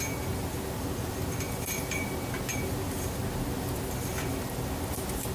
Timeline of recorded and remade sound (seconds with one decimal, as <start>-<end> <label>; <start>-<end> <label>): 0.0-2.5 recorded; 2.5-3.1 remade; 3.1-5.3 recorded